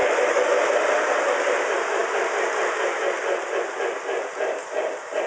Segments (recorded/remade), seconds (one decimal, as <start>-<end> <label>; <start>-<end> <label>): 0.0-0.5 remade; 0.5-5.3 recorded